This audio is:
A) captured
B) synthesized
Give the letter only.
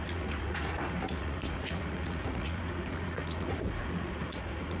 B